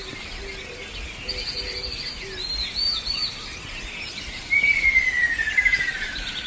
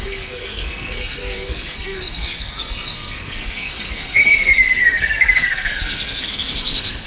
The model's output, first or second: second